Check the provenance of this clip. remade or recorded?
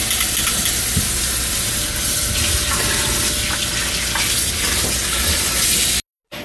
recorded